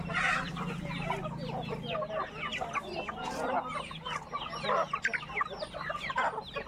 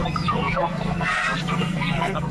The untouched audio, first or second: first